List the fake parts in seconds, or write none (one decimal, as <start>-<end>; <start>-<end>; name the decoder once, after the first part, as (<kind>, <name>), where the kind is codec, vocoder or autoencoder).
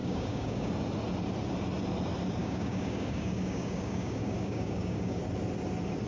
0.0-0.7 (codec, DAC); 2.4-5.2